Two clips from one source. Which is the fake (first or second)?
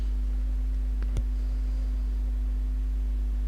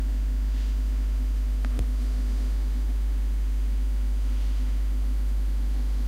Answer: second